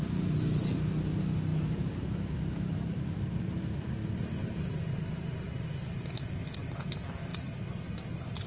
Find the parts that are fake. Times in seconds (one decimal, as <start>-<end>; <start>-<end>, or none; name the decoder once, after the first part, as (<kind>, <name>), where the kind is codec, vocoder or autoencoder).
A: 1.5-6.1 (vocoder, BigVGAN v2)